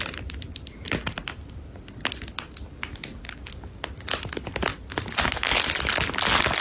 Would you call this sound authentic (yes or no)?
yes